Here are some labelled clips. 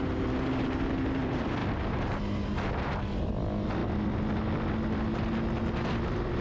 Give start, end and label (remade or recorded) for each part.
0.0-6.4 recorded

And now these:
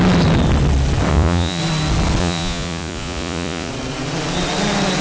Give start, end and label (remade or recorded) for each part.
0.0-1.1 recorded; 1.1-1.6 remade; 1.6-2.2 recorded; 2.2-3.7 remade; 3.7-5.0 recorded

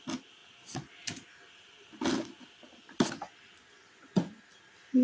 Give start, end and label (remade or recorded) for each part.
0.0-3.6 recorded; 3.6-4.4 remade; 4.4-5.0 recorded

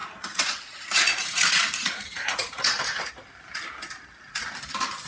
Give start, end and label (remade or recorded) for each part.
0.0-3.1 remade; 3.1-5.1 recorded